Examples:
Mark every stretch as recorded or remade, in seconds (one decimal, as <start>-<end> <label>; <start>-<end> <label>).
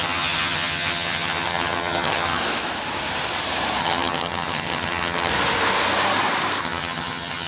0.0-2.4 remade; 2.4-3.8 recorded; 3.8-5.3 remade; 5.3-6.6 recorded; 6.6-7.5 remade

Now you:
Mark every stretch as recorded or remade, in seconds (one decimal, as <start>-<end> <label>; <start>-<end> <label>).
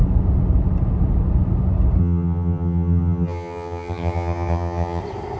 0.0-2.0 recorded; 2.0-5.0 remade; 5.0-5.4 recorded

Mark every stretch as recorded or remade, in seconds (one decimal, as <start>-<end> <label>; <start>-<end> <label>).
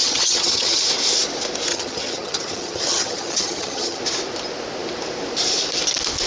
0.0-0.8 remade; 0.8-1.7 recorded; 1.7-4.0 remade; 4.0-6.3 recorded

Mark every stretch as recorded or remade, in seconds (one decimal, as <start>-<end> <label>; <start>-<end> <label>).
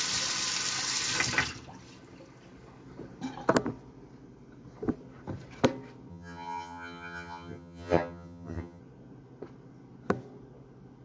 0.0-6.1 recorded; 6.1-8.8 remade; 8.8-11.0 recorded